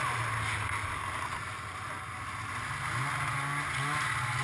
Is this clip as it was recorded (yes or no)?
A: yes